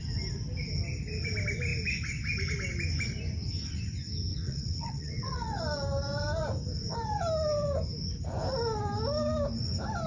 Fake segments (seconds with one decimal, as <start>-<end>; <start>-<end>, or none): 4.3-5.6